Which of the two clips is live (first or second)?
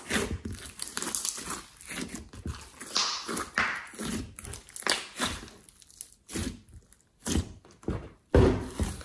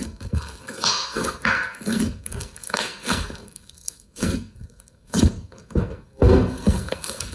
first